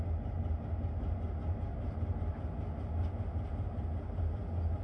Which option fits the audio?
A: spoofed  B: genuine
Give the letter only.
B